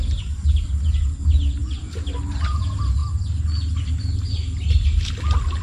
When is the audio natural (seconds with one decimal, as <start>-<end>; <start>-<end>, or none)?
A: 0.0-5.6